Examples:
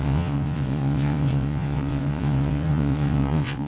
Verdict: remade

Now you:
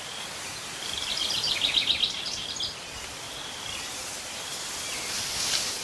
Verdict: recorded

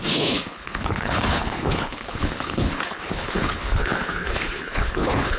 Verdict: remade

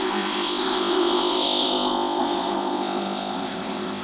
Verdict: remade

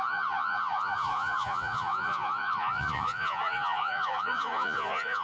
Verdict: remade